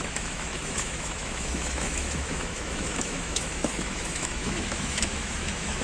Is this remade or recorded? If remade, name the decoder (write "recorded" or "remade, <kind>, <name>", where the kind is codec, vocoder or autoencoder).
remade, autoencoder, DAC-VAE